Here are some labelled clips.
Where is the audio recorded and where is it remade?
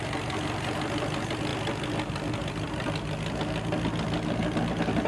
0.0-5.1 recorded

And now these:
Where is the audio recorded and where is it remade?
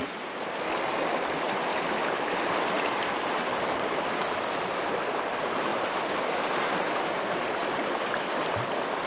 0.0-1.7 recorded; 1.7-4.1 remade; 4.1-9.1 recorded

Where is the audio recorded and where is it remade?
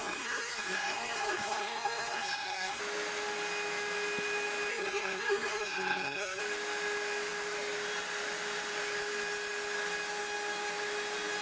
0.0-2.8 remade; 2.8-4.7 recorded; 4.7-6.4 remade; 6.4-11.4 recorded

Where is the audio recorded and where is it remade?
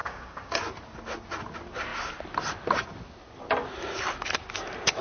0.0-0.6 remade; 0.6-5.0 recorded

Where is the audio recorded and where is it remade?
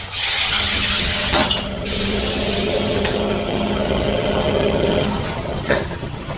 0.0-6.4 remade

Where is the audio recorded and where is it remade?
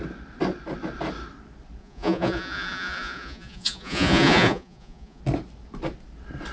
0.0-1.8 recorded; 1.8-5.2 remade; 5.2-6.5 recorded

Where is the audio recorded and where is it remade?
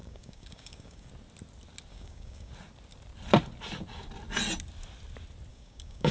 0.0-1.1 remade; 1.1-1.9 recorded; 1.9-2.5 remade; 2.5-5.5 recorded; 5.5-6.1 remade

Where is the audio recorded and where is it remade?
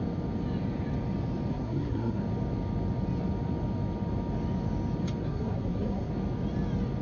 0.0-1.5 recorded; 1.5-2.2 remade; 2.2-5.2 recorded; 5.2-6.1 remade; 6.1-7.0 recorded